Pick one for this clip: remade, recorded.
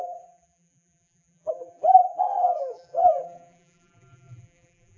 remade